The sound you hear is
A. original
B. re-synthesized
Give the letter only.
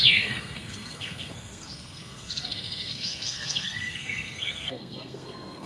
B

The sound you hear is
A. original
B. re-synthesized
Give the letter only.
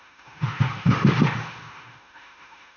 B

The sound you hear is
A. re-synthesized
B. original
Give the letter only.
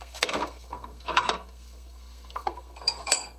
A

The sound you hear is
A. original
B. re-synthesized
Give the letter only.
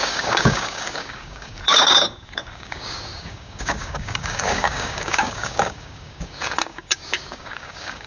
B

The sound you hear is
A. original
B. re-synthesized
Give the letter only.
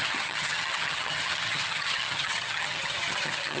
B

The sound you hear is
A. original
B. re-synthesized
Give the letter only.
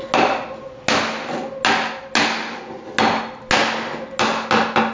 A